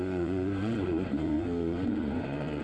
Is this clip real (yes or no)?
no